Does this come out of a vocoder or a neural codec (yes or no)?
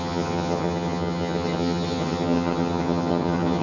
yes